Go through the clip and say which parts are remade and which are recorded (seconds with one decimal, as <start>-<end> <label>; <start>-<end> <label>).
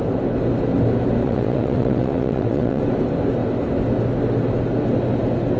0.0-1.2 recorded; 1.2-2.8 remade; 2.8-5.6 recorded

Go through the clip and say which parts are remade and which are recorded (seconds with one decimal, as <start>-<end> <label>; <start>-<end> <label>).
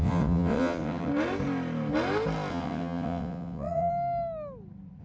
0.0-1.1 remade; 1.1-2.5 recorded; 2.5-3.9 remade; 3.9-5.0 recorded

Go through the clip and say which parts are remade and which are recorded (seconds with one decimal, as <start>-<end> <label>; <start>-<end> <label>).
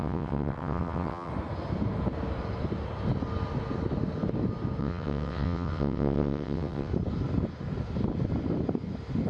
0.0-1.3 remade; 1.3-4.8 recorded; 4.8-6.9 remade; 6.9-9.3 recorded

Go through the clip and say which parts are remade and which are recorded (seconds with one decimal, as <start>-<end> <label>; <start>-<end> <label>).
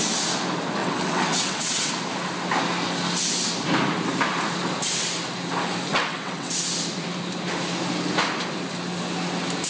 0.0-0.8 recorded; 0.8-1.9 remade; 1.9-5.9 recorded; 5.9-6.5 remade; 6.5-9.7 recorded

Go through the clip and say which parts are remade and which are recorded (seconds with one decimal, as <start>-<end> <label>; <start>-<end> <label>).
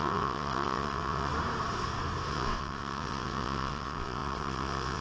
0.0-1.3 remade; 1.3-2.3 recorded; 2.3-5.0 remade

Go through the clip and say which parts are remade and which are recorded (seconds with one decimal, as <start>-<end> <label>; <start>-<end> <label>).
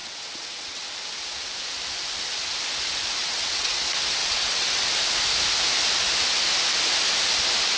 0.0-0.9 remade; 0.9-3.2 recorded; 3.2-3.8 remade; 3.8-4.2 recorded; 4.2-4.8 remade; 4.8-7.8 recorded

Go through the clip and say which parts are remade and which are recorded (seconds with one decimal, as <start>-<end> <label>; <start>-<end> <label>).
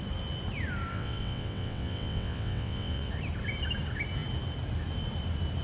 0.0-0.9 recorded; 0.9-3.1 remade; 3.1-5.6 recorded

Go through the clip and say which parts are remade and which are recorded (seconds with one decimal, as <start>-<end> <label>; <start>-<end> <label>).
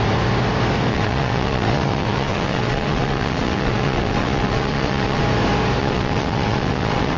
0.0-0.9 recorded; 0.9-5.2 remade; 5.2-5.8 recorded; 5.8-7.2 remade